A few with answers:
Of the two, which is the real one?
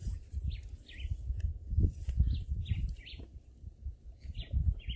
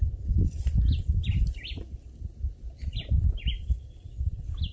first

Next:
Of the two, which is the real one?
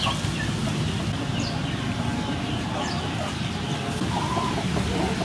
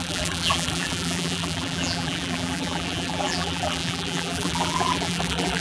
first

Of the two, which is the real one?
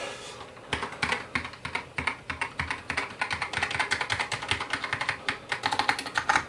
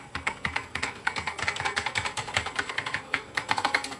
first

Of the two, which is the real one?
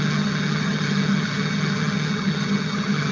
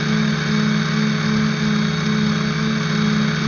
second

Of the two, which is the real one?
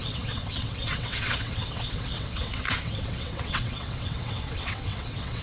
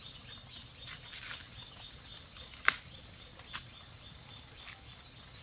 second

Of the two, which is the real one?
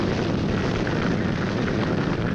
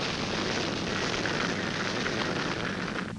second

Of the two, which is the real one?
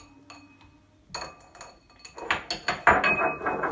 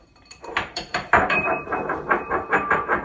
first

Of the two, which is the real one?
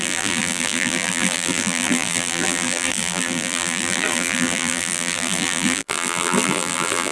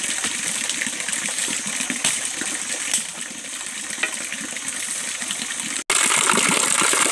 second